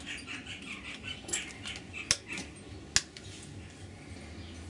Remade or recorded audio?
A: recorded